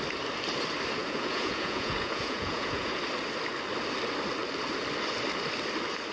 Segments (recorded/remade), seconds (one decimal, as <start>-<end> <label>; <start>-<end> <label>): 0.0-1.0 recorded; 1.0-3.0 remade; 3.0-6.1 recorded